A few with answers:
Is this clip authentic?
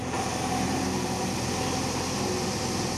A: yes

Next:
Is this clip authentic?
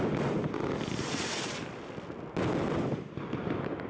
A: yes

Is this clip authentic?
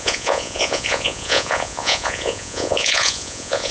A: no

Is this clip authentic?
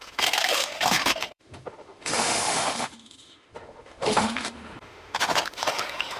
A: no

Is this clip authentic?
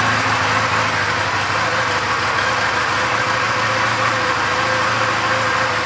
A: yes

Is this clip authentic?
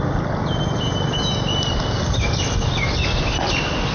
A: yes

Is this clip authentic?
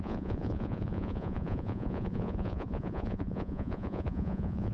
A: no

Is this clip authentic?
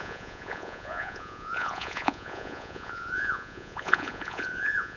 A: no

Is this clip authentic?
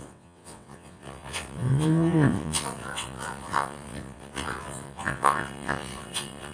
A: no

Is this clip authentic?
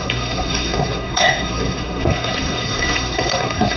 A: no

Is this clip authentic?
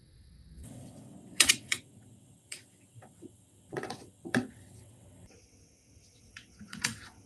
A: no